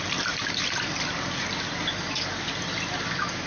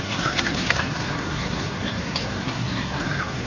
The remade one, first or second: second